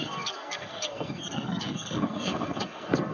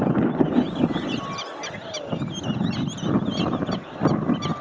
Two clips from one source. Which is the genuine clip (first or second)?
second